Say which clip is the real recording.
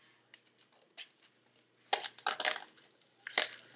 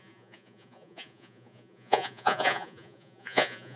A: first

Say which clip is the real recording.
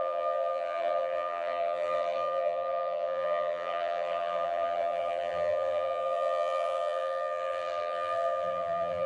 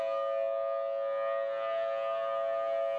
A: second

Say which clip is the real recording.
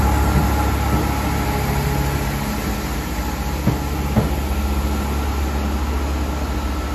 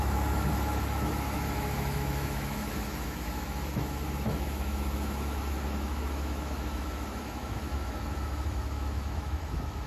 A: first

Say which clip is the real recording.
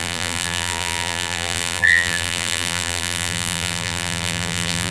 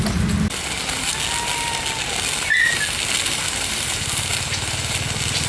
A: second